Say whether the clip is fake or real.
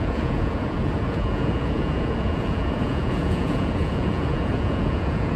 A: fake